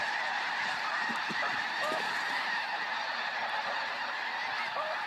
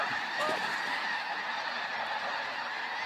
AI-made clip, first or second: first